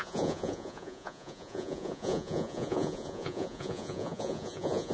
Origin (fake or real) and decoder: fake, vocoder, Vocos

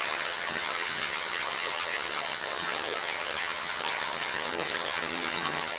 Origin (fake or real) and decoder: fake, vocoder, HiFi-GAN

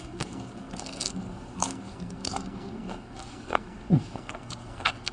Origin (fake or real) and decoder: fake, codec, SNAC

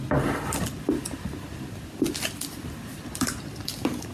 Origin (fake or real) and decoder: fake, vocoder, BigVGAN v2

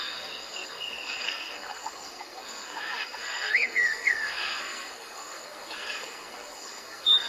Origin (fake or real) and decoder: fake, codec, SNAC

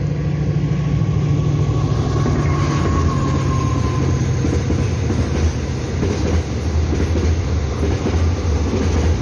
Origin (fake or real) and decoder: real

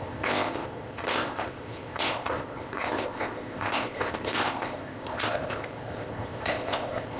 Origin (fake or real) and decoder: fake, codec, ZipCodec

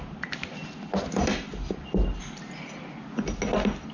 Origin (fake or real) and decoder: real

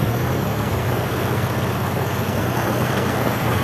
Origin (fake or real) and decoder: fake, codec, SNAC